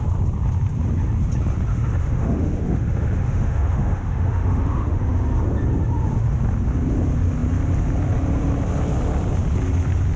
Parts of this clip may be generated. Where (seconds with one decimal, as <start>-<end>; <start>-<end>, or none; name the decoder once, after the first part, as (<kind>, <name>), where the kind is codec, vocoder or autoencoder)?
1.7-5.0 (autoencoder, DAC-VAE)